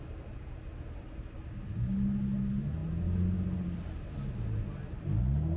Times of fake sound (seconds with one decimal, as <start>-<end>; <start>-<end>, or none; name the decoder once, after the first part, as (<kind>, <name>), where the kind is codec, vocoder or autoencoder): none